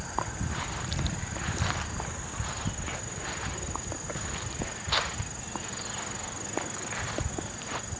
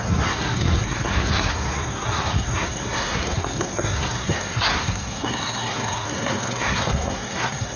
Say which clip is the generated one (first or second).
second